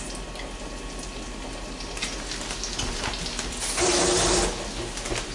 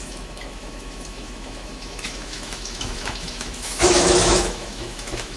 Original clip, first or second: first